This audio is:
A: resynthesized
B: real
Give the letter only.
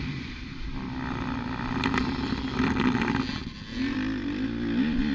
B